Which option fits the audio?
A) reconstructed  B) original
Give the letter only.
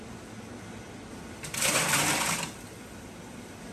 B